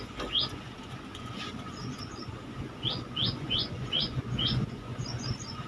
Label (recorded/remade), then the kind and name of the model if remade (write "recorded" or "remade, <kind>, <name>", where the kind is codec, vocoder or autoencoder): remade, vocoder, Vocos